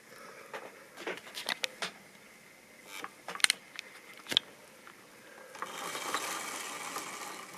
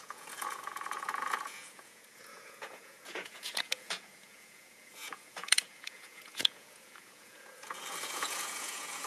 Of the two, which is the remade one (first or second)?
second